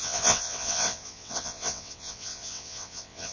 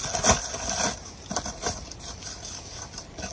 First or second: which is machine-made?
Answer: first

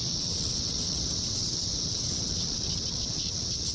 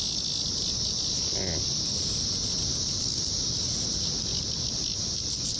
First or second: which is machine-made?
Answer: first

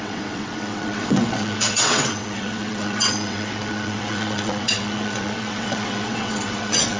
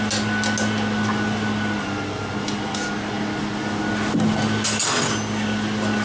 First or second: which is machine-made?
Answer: first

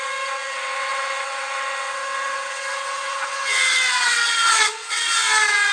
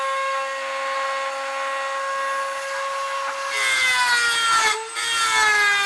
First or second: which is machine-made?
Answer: first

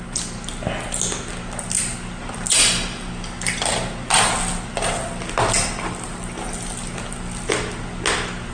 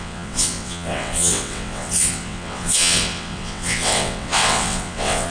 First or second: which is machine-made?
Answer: second